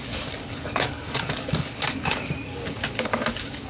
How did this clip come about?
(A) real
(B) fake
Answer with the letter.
B